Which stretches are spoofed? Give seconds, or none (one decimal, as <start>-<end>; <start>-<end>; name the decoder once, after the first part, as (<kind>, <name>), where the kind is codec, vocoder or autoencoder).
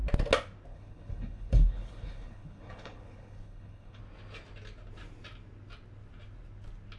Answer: 0.7-4.0 (codec, HILCodec)